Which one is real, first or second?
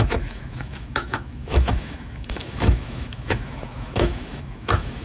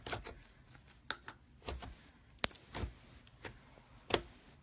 second